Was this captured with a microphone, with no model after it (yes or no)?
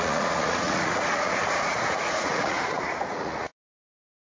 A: no